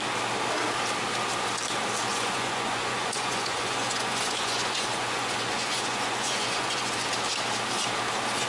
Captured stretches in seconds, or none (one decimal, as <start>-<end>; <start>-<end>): 0.0-2.1; 6.9-8.5